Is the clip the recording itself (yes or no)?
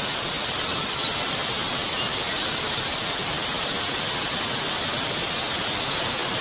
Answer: yes